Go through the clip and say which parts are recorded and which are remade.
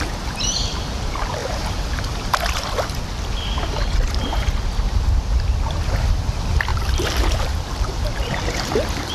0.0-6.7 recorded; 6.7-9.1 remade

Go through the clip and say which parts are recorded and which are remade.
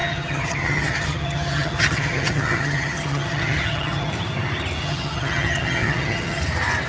0.0-4.1 remade; 4.1-4.8 recorded; 4.8-6.4 remade; 6.4-6.9 recorded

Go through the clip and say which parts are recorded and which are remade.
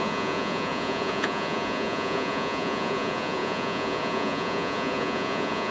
0.0-5.7 remade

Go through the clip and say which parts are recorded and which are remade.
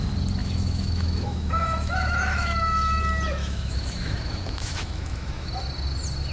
0.0-0.4 recorded; 0.4-3.0 remade; 3.0-3.4 recorded; 3.4-5.5 remade; 5.5-6.3 recorded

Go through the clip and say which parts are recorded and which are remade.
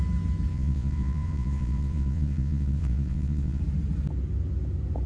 0.0-0.5 recorded; 0.5-3.6 remade; 3.6-5.1 recorded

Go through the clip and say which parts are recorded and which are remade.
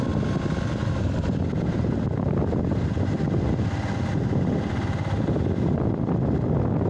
0.0-0.8 recorded; 0.8-1.4 remade; 1.4-6.9 recorded